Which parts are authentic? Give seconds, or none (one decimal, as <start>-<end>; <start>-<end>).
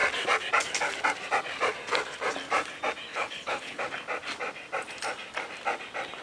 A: 0.0-3.1; 3.8-6.2